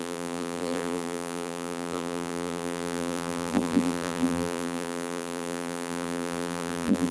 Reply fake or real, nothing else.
fake